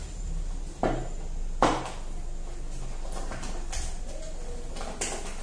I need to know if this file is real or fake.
real